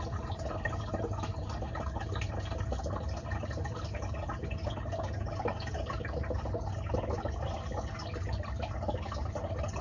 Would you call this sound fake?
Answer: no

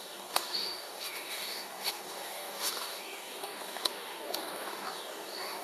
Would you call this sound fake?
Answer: yes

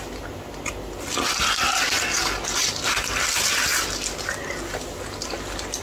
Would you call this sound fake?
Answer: no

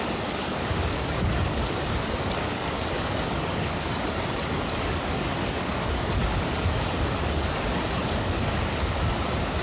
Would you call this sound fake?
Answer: yes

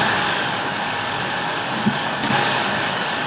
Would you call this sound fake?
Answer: yes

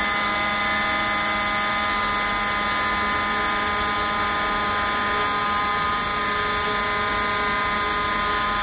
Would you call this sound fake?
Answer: no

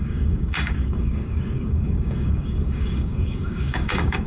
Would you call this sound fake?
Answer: yes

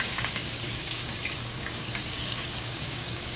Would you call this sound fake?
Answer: yes